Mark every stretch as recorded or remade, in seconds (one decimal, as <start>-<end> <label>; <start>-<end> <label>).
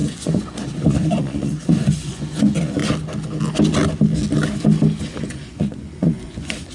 0.0-2.8 remade; 2.8-5.0 recorded; 5.0-6.7 remade